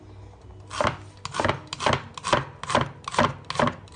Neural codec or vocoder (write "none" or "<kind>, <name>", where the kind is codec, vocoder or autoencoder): none